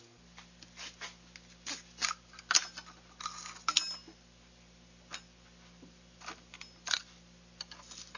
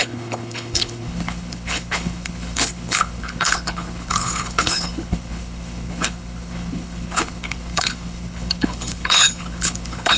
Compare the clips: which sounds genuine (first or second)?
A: first